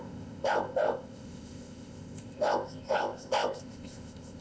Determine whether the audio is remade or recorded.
remade